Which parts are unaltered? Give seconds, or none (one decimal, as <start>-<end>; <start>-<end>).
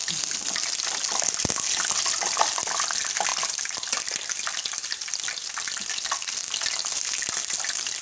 0.0-8.0